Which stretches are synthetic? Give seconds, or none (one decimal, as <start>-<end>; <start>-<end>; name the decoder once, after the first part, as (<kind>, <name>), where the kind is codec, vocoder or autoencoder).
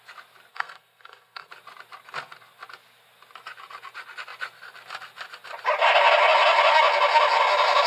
0.5-1.5 (codec, SNAC)